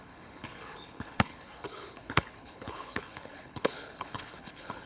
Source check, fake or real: fake